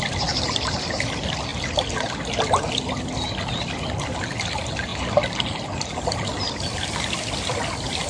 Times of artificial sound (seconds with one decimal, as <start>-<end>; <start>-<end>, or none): none